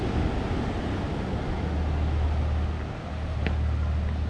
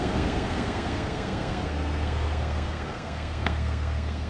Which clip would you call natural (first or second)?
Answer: first